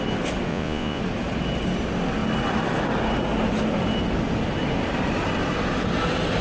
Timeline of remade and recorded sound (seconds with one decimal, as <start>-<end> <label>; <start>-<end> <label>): 0.0-0.5 recorded; 0.5-1.0 remade; 1.0-6.4 recorded